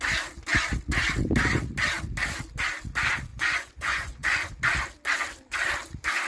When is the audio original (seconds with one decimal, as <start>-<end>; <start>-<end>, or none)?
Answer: 0.0-3.3; 4.5-6.3